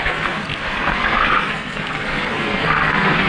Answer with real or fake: fake